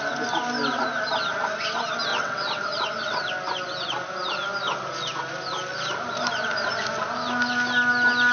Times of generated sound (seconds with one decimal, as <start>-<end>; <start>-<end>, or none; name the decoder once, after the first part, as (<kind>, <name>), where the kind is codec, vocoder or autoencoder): 2.1-3.3 (vocoder, WaveNeXt)